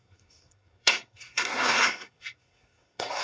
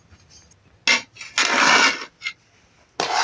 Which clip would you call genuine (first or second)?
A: second